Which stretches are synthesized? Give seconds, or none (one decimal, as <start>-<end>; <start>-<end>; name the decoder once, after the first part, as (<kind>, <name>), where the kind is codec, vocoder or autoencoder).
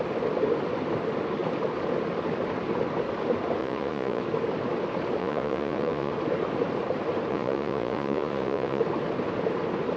3.6-4.2 (vocoder, Vocos); 5.2-6.1; 7.3-8.8